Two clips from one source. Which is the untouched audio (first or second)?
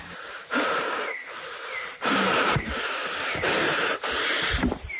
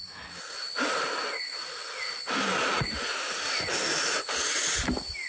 second